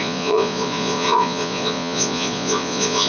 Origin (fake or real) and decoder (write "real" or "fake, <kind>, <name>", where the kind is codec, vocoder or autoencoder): fake, vocoder, Vocos